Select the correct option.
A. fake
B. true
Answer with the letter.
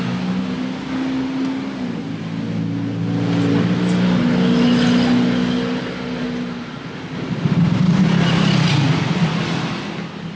B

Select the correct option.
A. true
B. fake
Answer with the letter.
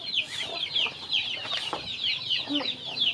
A